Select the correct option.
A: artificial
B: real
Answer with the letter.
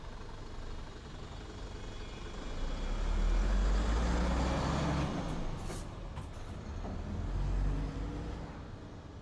B